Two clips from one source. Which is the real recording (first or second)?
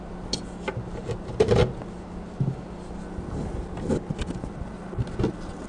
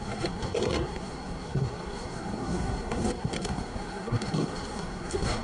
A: first